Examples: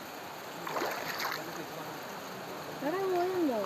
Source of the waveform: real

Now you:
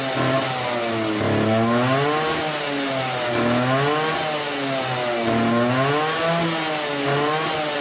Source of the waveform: real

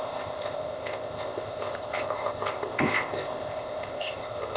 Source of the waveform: fake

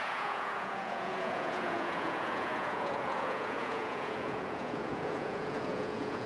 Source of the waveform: fake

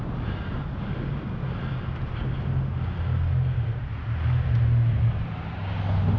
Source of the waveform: real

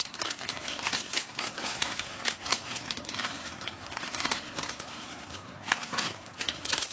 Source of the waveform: fake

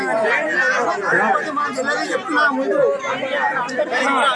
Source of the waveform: real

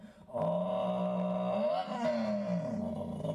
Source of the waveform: real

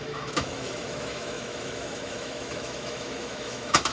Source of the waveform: fake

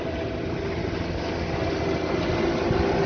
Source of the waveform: real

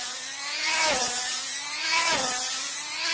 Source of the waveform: fake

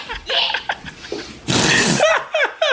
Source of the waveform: real